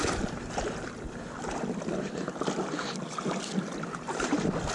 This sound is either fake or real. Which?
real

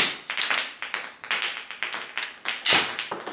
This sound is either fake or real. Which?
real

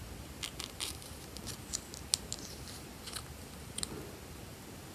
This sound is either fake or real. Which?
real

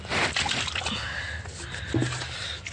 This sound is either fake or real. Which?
real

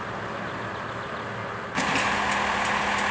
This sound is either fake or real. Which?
real